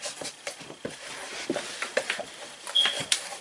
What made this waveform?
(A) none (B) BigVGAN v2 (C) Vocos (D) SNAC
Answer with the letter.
B